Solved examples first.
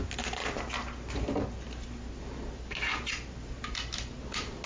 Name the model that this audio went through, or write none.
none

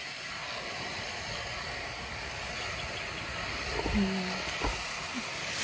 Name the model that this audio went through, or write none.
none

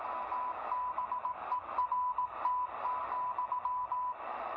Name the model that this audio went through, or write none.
none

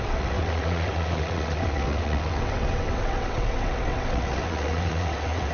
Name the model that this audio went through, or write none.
vocoder, WaveNeXt